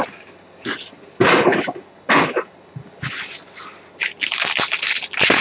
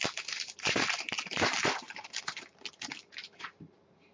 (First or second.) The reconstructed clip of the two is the second